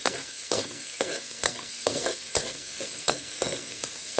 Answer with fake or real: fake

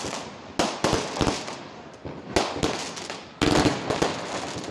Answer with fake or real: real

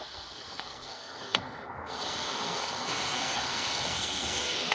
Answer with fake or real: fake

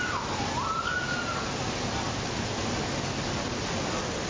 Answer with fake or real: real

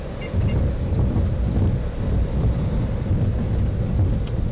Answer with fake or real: real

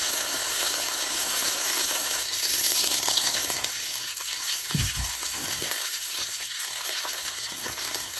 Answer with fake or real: fake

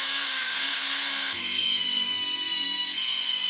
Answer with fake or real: fake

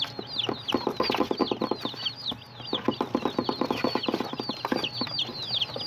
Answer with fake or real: real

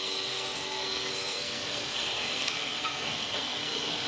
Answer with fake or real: fake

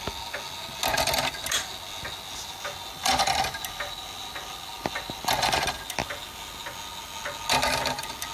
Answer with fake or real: real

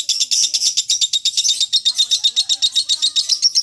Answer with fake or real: real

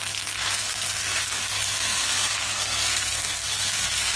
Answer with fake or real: fake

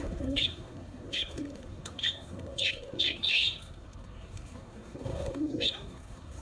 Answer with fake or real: fake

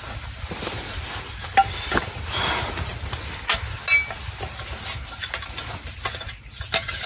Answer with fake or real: real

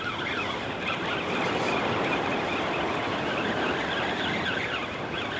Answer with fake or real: real